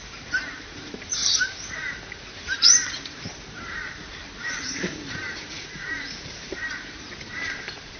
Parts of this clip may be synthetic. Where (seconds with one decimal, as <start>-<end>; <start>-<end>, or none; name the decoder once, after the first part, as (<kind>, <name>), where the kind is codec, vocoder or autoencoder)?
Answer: 0.0-8.0 (vocoder, BigVGAN v2)